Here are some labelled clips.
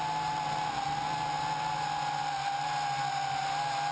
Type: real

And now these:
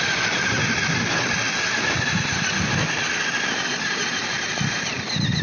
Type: real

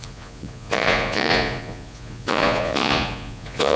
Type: fake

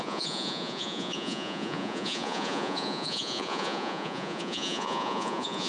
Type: fake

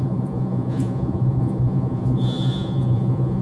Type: fake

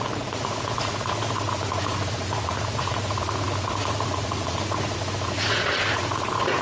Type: fake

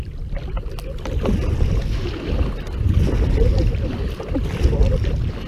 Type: real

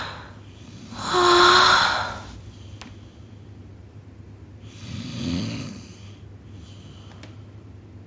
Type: real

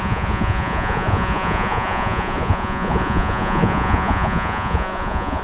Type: fake